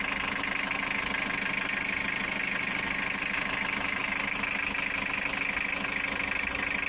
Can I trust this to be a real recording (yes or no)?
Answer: yes